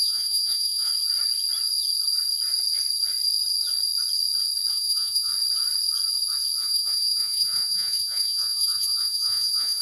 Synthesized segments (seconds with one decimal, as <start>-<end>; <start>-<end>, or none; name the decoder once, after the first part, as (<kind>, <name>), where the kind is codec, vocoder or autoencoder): 0.0-0.9 (vocoder, Vocos); 4.7-5.3; 6.6-9.8